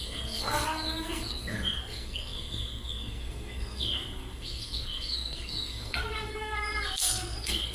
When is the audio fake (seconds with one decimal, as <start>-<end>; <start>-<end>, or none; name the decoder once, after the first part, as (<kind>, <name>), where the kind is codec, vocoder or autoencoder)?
0.0-7.7 (codec, SNAC)

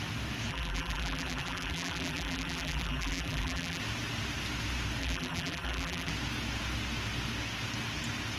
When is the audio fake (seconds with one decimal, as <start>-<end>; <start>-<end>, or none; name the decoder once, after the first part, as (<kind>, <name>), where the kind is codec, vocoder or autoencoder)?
0.5-3.8 (vocoder, BigVGAN v2); 5.0-6.1

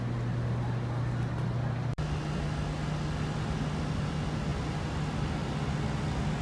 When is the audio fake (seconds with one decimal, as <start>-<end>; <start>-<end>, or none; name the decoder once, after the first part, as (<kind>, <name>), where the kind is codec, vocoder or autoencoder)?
none